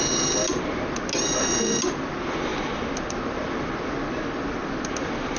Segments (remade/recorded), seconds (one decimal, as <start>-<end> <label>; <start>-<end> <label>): 0.0-5.4 recorded